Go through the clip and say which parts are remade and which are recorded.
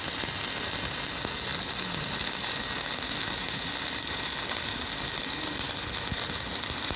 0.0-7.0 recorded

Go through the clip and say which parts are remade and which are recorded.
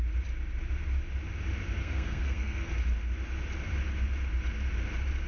0.0-1.8 recorded; 1.8-2.7 remade; 2.7-5.3 recorded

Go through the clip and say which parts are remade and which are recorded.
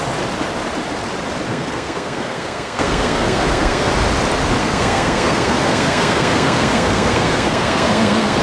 0.0-1.5 recorded; 1.5-3.9 remade; 3.9-4.6 recorded; 4.6-8.4 remade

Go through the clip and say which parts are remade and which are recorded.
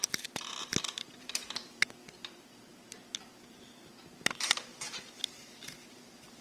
0.0-6.4 recorded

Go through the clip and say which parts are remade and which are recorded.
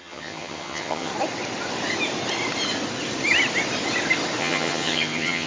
0.0-1.1 remade; 1.1-4.4 recorded; 4.4-5.5 remade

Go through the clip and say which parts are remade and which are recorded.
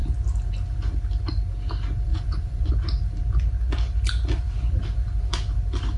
0.0-2.1 recorded; 2.1-2.7 remade; 2.7-6.0 recorded